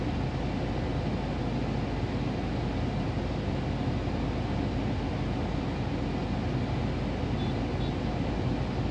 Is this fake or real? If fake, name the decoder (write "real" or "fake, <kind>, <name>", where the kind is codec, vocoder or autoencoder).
real